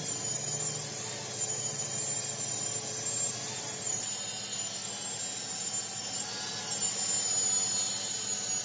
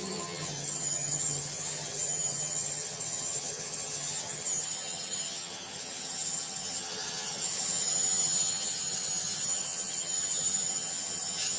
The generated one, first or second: second